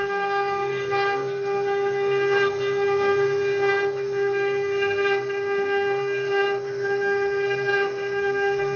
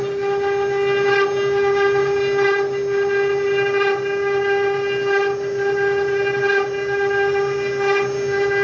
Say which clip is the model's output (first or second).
first